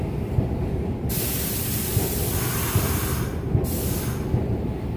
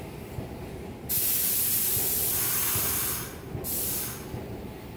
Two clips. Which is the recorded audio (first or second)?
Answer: second